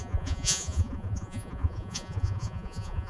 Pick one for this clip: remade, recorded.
remade